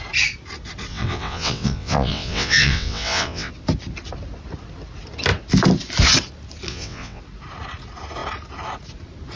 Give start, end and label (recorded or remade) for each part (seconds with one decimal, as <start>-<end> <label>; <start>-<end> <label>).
0.0-0.9 recorded; 0.9-3.5 remade; 3.5-6.7 recorded; 6.7-7.2 remade; 7.2-9.4 recorded